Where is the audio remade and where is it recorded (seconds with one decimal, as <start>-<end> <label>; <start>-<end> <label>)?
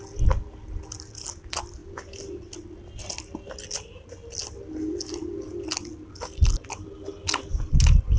0.0-8.2 recorded